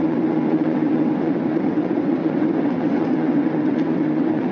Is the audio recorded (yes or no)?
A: no